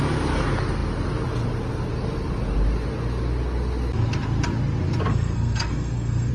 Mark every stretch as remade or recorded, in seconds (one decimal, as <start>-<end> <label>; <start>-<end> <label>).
0.0-5.1 recorded; 5.1-6.3 remade